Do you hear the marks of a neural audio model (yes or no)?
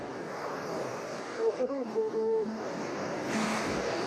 yes